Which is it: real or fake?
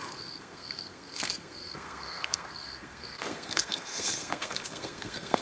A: fake